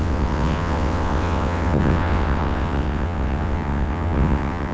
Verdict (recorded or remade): remade